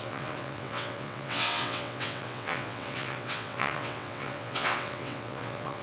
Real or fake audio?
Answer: fake